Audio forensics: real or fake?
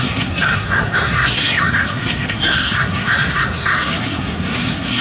fake